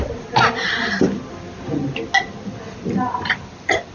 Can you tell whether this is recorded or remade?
recorded